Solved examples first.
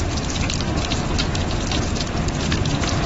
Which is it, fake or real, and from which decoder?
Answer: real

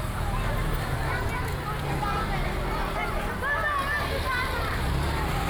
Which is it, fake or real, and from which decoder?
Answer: real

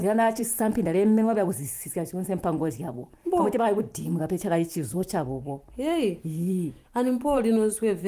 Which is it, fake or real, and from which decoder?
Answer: fake, vocoder, BigVGAN v2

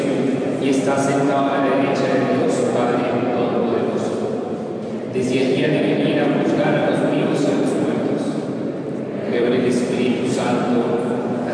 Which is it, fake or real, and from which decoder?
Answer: fake, vocoder, BigVGAN v2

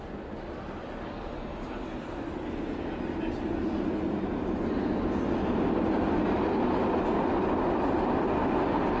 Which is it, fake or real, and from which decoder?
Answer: real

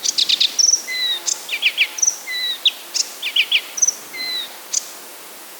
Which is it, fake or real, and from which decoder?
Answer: real